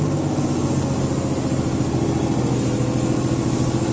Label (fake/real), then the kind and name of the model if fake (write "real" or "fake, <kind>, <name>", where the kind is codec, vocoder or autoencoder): real